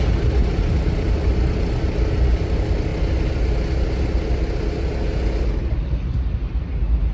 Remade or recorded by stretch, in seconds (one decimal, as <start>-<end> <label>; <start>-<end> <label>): 0.0-2.9 remade; 2.9-5.7 recorded; 5.7-7.1 remade